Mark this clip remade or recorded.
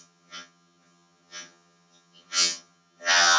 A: remade